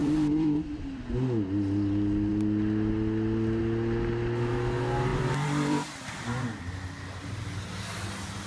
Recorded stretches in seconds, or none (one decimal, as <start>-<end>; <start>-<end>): 1.0-5.1; 6.9-8.5